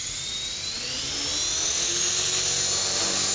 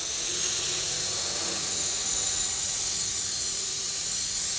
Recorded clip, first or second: first